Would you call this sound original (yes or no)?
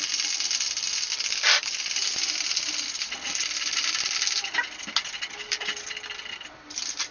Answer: yes